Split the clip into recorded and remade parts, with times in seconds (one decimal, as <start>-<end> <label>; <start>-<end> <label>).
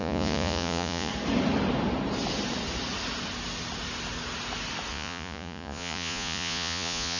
0.0-1.1 remade; 1.1-4.9 recorded; 4.9-7.2 remade